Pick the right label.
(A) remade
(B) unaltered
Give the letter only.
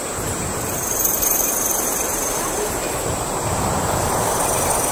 A